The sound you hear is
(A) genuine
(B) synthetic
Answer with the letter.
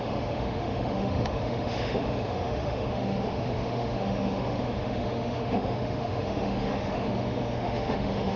B